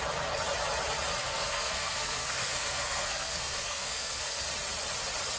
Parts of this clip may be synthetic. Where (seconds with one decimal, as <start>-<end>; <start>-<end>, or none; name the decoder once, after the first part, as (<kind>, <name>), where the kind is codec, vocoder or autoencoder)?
1.2-4.4 (codec, SNAC)